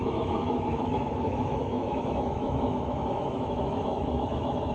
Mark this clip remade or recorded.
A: remade